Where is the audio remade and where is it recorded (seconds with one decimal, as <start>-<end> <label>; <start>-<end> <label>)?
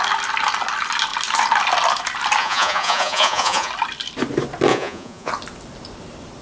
0.0-2.4 recorded; 2.4-3.7 remade; 3.7-4.7 recorded; 4.7-5.3 remade; 5.3-6.4 recorded